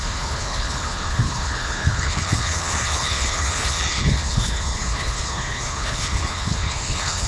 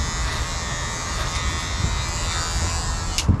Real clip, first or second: second